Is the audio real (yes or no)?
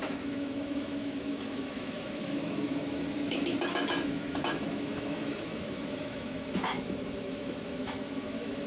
no